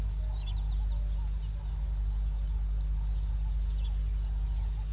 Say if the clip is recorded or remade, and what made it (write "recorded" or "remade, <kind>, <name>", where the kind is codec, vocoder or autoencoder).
recorded